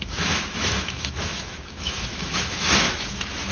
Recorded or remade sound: remade